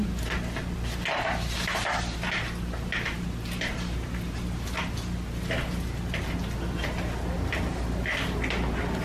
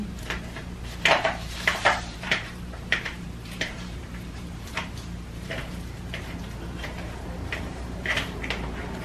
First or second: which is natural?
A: first